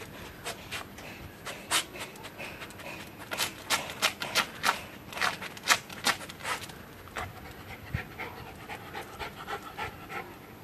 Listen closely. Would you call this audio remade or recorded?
recorded